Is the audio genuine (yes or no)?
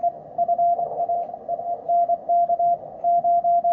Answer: yes